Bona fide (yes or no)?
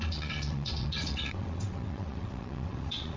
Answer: no